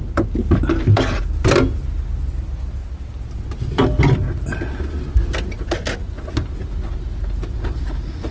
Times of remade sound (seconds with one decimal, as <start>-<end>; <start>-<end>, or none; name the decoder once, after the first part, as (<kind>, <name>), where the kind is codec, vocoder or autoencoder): none

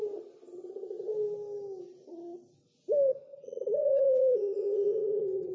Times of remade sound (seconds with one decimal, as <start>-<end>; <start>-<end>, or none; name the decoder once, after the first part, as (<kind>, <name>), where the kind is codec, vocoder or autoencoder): 3.3-5.5 (vocoder, Vocos)

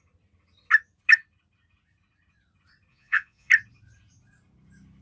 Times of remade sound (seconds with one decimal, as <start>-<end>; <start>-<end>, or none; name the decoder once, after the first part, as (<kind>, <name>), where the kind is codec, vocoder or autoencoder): 2.9-3.5 (vocoder, Vocos)

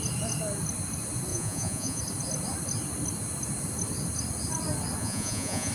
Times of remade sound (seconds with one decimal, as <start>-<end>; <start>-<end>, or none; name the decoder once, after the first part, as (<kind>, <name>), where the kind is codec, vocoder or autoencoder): 1.3-2.0 (vocoder, Vocos); 5.0-5.7

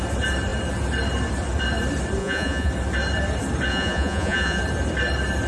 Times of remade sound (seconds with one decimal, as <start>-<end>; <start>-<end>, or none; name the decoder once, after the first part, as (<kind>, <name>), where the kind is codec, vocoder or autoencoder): 2.2-2.7 (vocoder, Vocos); 3.7-4.6

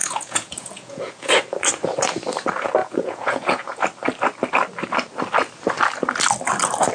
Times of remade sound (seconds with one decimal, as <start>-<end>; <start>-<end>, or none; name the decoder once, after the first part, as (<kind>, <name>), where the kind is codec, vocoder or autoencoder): 0.0-1.3 (vocoder, Vocos); 2.8-3.8